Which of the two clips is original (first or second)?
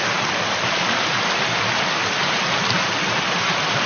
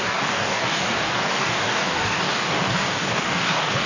first